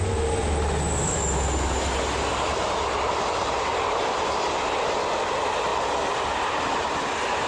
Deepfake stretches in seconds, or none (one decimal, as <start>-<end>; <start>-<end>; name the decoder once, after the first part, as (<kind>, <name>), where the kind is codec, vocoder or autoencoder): 3.4-4.0 (vocoder, BigVGAN v2)